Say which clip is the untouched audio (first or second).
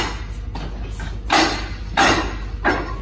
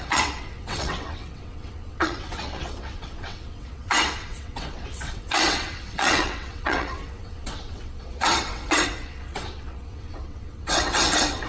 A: first